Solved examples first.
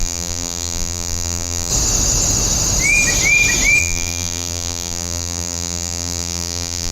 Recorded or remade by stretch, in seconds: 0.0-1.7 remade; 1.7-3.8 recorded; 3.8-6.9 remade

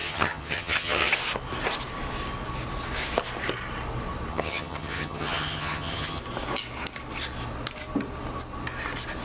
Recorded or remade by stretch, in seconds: 0.0-1.1 remade; 1.1-4.3 recorded; 4.3-6.2 remade; 6.2-9.2 recorded